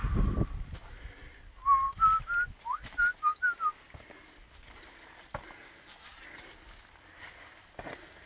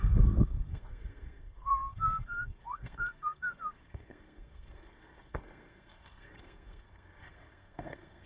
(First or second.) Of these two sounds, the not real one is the second